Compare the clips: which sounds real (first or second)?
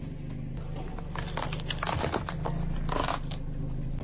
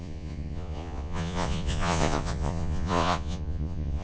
first